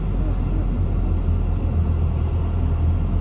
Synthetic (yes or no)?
no